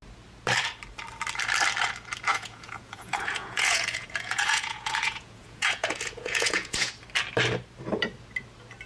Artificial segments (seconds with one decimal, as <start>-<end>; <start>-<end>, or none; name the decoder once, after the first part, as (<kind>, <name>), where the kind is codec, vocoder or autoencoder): 2.3-6.9 (vocoder, Vocos)